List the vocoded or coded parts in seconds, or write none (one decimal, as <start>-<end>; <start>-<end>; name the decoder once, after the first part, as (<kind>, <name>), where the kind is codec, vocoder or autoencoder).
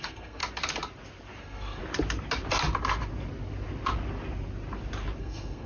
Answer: 0.0-0.4 (codec, SNAC); 1.4-1.8; 5.2-5.7